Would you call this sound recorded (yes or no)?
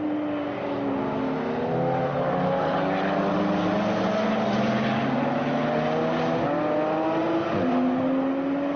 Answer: yes